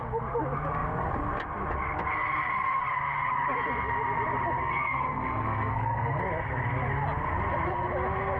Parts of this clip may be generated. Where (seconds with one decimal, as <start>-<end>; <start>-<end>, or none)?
4.6-6.2